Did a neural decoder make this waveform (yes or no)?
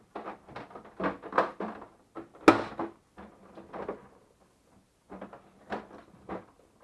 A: no